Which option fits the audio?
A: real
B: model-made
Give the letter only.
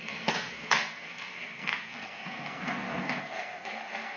B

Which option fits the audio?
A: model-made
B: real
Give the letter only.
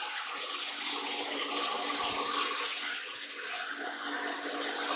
B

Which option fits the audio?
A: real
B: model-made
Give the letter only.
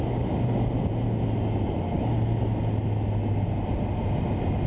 A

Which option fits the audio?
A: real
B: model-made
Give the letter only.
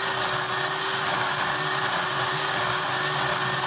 A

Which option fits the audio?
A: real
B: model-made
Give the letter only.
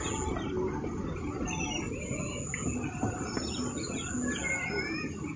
A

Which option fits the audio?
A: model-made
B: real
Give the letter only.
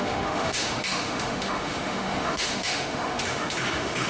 A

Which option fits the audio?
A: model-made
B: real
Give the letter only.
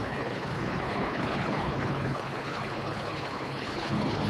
A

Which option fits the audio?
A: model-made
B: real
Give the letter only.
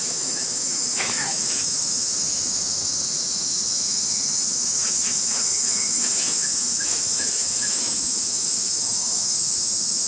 A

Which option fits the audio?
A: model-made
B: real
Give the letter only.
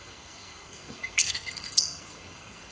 A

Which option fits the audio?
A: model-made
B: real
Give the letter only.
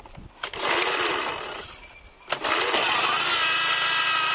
B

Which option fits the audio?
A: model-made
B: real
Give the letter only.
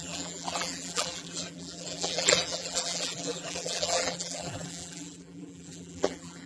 A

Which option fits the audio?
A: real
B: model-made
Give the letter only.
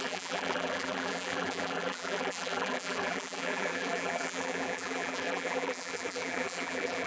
B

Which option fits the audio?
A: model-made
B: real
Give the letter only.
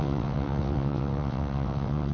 A